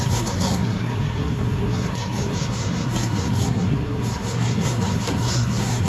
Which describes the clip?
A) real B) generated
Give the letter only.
B